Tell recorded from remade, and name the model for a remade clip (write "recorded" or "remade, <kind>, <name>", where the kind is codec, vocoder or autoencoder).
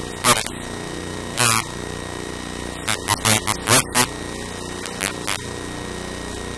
recorded